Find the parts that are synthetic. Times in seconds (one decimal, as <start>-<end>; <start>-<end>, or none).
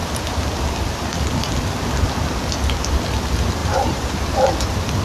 3.6-4.5